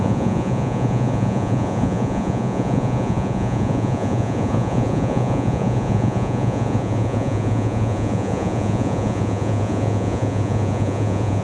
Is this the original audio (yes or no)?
no